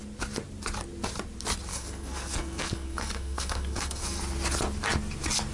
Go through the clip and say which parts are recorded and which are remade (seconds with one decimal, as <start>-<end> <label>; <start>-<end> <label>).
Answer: 0.0-1.7 recorded; 1.7-4.2 remade; 4.2-5.5 recorded